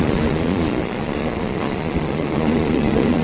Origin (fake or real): fake